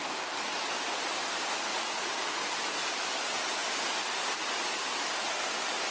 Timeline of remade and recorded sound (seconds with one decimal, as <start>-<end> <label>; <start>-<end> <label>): 0.0-1.7 recorded; 1.7-2.4 remade; 2.4-5.9 recorded